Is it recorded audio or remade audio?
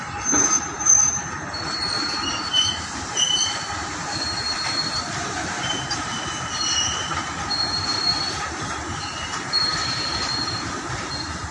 remade